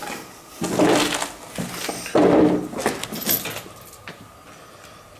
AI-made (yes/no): no